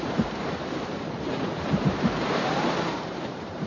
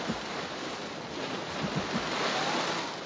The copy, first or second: first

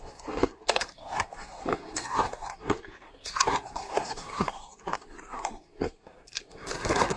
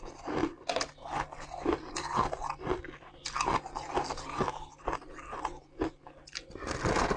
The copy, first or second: first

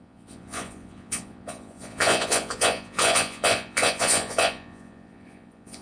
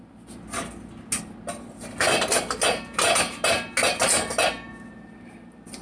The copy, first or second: first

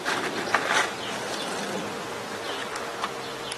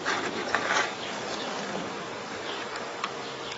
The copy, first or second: second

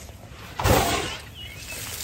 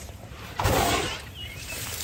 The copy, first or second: second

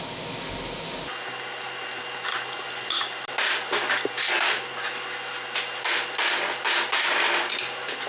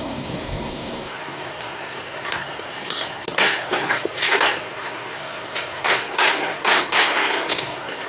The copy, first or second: second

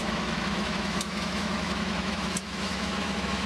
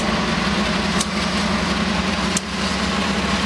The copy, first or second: first